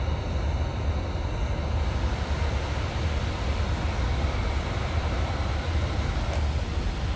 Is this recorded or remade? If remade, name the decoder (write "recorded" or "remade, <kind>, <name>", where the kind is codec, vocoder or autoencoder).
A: recorded